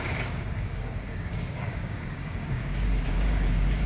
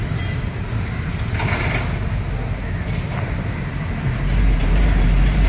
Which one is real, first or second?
second